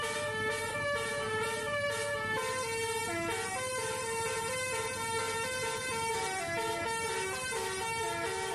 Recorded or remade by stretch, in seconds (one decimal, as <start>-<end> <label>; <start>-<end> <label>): 0.0-8.5 recorded